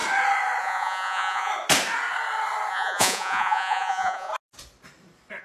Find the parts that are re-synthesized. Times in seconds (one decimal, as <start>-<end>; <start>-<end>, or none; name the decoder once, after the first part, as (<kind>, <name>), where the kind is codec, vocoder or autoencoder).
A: 0.6-1.5 (vocoder, Vocos); 2.7-4.3